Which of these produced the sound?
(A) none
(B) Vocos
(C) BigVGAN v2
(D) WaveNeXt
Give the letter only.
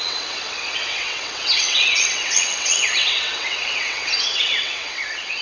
D